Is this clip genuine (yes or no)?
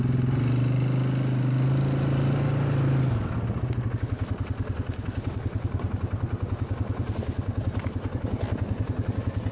yes